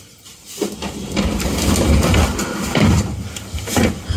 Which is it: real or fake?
real